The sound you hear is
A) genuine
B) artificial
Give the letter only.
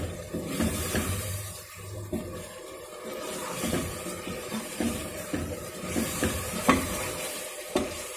B